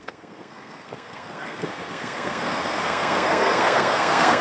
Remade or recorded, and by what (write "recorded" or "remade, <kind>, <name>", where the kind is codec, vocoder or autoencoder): remade, codec, SNAC